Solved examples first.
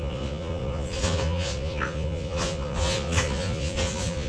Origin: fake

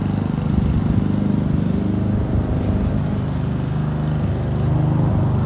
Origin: real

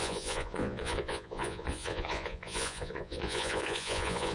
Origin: fake